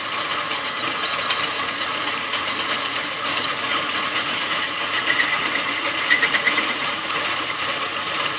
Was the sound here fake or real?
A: fake